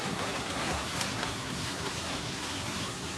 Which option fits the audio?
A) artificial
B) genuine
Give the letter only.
A